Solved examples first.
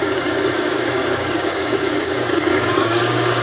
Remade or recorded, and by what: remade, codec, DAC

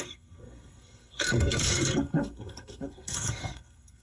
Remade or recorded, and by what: remade, codec, SNAC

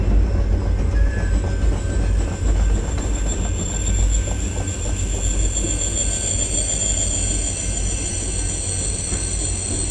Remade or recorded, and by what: recorded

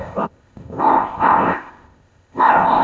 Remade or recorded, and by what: remade, codec, ZipCodec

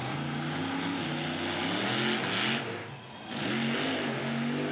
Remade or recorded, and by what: recorded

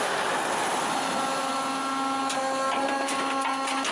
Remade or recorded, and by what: recorded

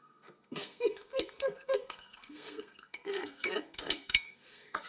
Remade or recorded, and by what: remade, codec, SNAC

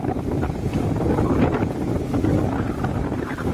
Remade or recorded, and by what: recorded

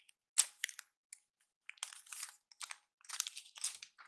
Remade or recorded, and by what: recorded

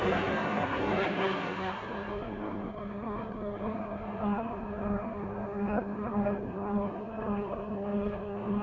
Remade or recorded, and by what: remade, codec, SNAC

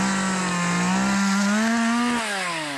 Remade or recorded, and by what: recorded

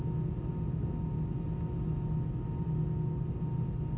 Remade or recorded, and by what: recorded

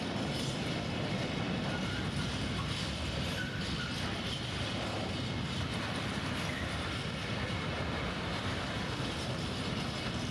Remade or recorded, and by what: recorded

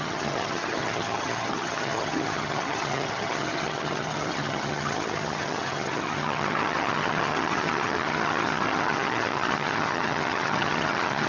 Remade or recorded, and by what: remade, vocoder, HiFi-GAN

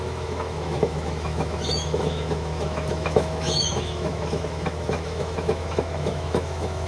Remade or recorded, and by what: remade, autoencoder, DAC-VAE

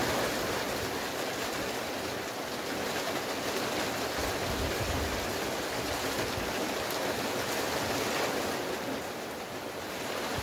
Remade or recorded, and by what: recorded